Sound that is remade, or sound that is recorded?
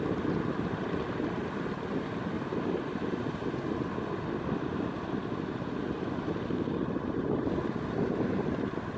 recorded